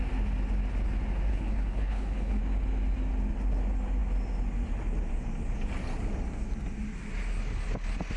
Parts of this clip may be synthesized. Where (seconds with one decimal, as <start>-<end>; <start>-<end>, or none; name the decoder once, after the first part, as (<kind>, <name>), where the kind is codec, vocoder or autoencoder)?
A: 1.3-2.4 (codec, HILCodec)